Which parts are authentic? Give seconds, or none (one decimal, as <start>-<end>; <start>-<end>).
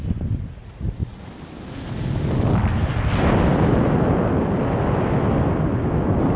0.0-0.6; 1.3-6.4